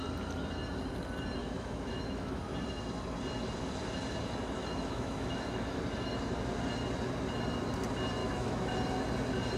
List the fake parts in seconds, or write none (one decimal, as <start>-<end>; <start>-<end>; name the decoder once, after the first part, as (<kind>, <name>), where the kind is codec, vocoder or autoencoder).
1.4-2.4 (autoencoder, DAC-VAE); 4.6-5.8; 8.2-8.7